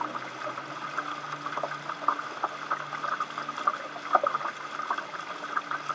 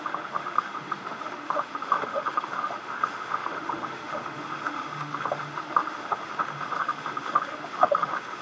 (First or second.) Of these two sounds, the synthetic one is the second